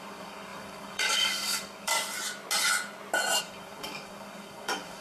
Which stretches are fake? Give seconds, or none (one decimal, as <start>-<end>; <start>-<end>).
0.0-1.9; 3.4-5.0